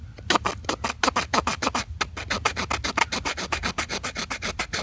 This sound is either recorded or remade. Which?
recorded